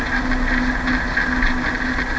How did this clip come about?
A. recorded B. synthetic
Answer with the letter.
A